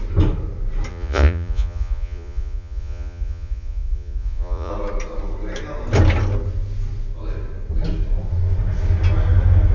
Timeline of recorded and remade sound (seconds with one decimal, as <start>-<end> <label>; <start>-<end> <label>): 0.0-0.9 recorded; 0.9-4.7 remade; 4.7-9.7 recorded